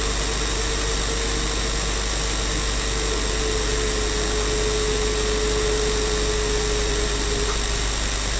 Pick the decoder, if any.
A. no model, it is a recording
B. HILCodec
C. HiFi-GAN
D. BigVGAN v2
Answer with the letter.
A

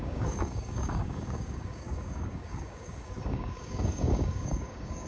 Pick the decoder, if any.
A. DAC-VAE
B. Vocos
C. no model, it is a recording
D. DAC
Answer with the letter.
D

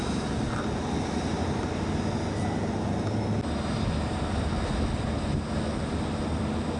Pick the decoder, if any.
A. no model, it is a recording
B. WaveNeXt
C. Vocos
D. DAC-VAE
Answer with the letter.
A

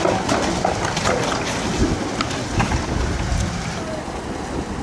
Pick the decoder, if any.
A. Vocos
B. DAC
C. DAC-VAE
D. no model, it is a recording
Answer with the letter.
D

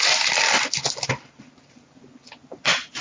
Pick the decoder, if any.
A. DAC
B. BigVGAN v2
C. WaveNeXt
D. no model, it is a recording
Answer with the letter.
D